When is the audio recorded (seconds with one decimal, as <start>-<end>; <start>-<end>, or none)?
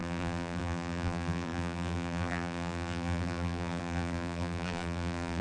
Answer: none